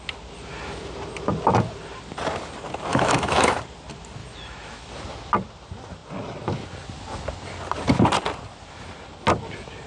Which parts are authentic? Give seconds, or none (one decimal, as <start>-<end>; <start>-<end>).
0.0-2.9; 3.6-4.2; 4.9-9.9